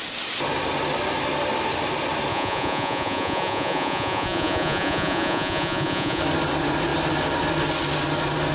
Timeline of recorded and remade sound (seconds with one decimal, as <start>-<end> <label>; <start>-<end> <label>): 0.0-2.3 recorded; 2.3-6.2 remade; 6.2-8.5 recorded